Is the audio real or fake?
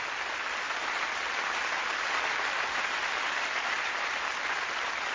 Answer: real